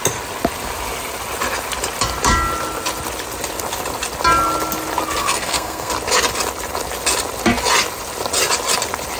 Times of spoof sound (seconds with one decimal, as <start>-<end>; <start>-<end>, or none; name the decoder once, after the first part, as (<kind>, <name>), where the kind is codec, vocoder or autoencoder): 5.2-5.9 (codec, SNAC)